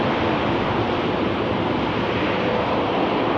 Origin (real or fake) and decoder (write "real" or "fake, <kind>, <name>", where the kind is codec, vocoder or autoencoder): real